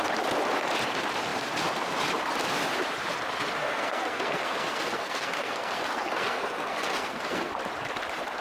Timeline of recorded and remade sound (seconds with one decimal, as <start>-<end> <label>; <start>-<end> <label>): 0.0-3.6 recorded; 3.6-7.5 remade; 7.5-8.4 recorded